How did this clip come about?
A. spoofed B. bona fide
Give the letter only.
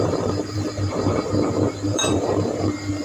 A